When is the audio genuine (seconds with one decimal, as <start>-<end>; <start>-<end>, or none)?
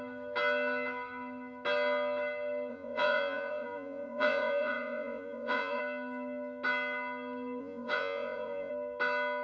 0.0-2.7; 5.8-7.6; 8.7-9.4